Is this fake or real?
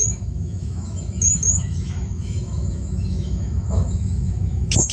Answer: fake